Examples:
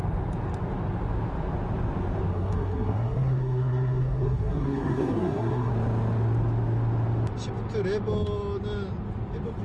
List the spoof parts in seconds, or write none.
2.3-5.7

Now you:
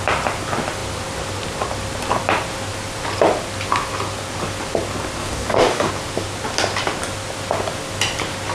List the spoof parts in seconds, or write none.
5.2-5.9